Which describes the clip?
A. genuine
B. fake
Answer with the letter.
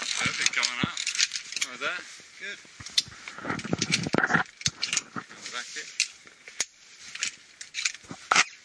A